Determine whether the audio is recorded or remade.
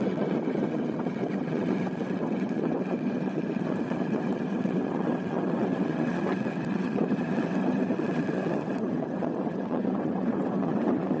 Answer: remade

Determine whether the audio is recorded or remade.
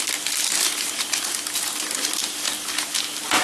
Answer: recorded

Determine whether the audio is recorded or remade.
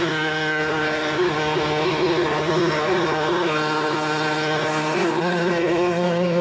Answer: remade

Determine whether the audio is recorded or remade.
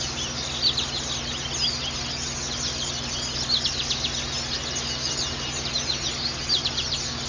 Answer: recorded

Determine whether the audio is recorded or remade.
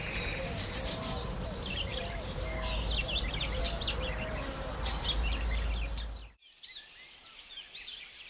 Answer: recorded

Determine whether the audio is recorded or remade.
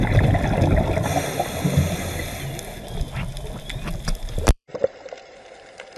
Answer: remade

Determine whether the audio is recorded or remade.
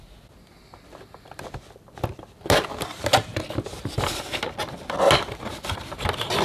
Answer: recorded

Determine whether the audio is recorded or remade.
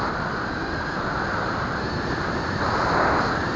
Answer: recorded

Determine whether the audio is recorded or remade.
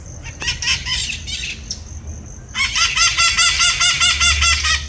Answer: recorded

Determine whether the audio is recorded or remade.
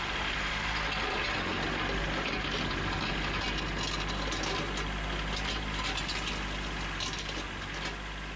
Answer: recorded